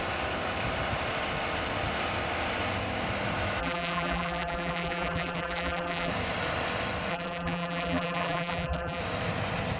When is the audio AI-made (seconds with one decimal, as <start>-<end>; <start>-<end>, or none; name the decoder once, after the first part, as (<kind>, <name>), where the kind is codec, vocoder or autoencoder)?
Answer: 3.6-6.1 (vocoder, BigVGAN v2); 7.1-9.0